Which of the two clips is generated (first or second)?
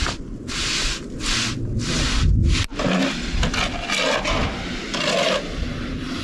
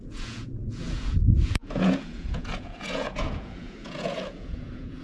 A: second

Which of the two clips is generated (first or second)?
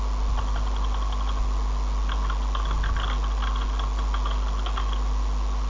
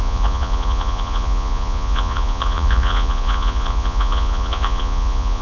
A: second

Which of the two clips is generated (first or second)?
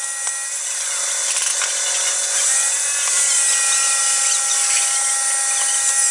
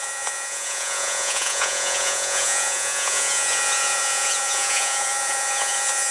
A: second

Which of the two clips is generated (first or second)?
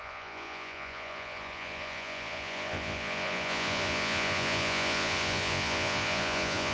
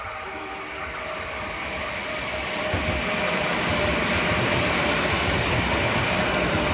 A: first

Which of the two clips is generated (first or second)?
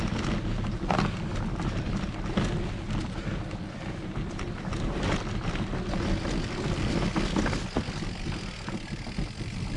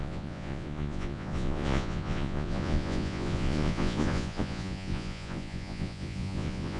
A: second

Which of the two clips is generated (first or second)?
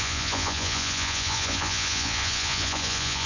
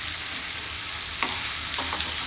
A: first